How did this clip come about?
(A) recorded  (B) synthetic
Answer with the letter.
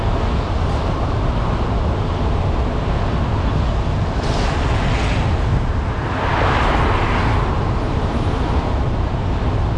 A